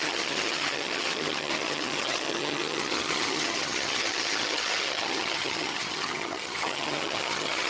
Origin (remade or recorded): remade